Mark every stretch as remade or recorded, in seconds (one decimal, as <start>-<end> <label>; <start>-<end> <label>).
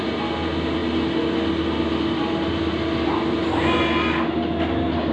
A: 0.0-5.1 recorded